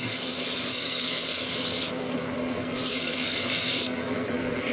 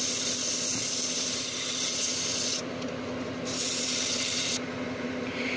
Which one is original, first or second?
second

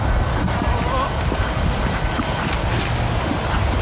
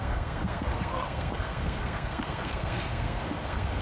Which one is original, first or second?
first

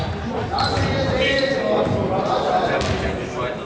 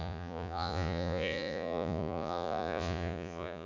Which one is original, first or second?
first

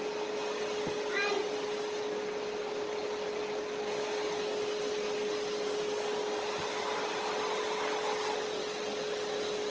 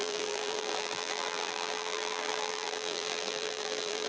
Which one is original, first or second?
first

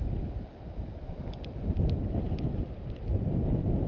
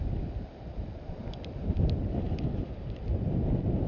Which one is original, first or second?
first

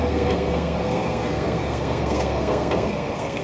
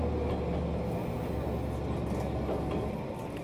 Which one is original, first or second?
second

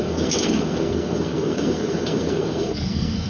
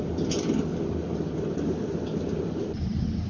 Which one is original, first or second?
second